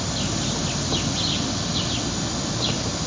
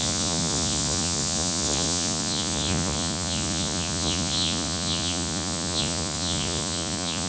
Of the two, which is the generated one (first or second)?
second